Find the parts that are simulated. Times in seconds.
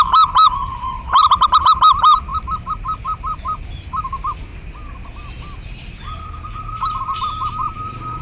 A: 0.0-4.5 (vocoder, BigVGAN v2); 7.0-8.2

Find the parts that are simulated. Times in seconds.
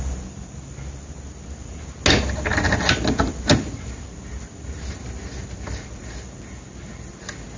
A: none